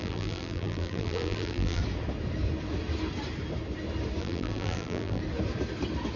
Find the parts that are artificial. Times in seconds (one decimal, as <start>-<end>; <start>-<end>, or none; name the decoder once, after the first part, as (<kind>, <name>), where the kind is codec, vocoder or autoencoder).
0.0-1.8 (vocoder, BigVGAN v2); 4.2-5.2